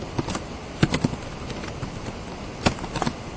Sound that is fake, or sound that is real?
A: real